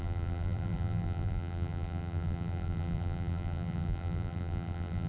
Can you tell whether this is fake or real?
fake